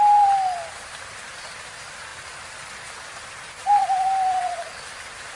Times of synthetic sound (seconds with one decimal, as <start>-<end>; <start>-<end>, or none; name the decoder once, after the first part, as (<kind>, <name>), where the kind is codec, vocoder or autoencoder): none